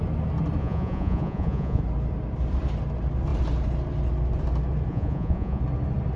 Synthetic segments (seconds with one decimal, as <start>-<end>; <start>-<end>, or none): 0.6-1.8; 4.9-5.6